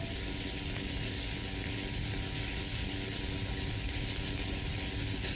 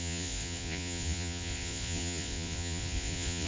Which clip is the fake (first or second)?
second